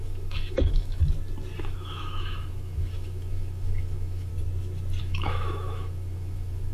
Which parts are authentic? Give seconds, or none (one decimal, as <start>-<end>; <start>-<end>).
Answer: 1.0-1.6; 4.3-5.0